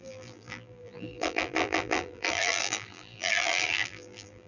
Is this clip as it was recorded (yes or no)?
no